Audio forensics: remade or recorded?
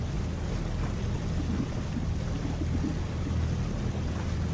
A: recorded